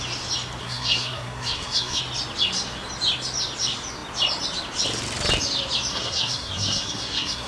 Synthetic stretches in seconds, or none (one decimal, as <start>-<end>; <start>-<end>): 0.6-2.0; 5.9-7.5